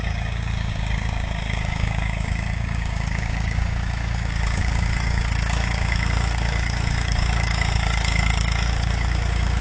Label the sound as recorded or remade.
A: remade